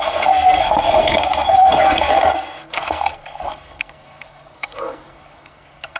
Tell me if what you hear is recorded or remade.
remade